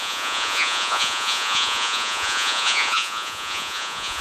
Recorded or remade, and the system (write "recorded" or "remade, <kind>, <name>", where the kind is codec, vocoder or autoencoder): remade, vocoder, Vocos